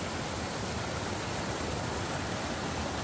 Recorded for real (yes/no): yes